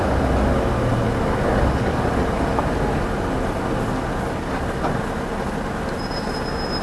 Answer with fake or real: real